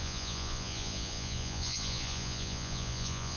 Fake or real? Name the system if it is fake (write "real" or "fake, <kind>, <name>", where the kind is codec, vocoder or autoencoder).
fake, vocoder, Vocos